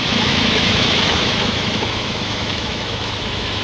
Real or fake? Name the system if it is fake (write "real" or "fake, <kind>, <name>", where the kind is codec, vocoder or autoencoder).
fake, autoencoder, DAC-VAE